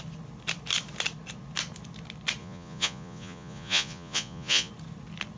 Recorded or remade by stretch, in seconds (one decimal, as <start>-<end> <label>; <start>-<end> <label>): 0.0-2.4 recorded; 2.4-4.7 remade; 4.7-5.4 recorded